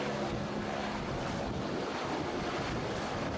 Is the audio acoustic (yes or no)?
yes